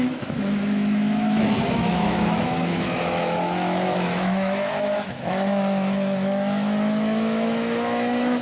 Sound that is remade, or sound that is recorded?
remade